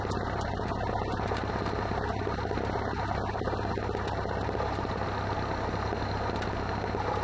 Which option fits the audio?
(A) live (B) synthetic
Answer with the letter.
A